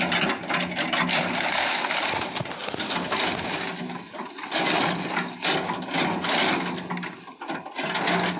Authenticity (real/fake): real